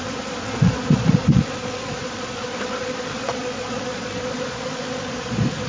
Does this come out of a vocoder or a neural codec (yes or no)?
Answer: yes